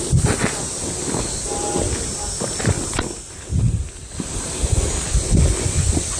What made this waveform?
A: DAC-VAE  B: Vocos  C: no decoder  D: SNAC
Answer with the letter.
C